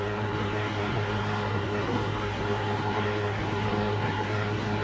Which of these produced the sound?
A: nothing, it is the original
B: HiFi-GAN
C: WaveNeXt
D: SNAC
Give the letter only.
D